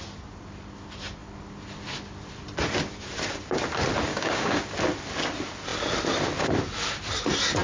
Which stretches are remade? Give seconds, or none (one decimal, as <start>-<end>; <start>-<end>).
4.1-4.6